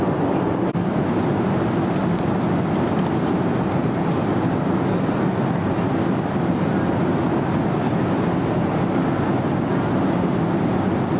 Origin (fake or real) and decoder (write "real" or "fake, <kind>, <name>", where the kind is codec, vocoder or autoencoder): real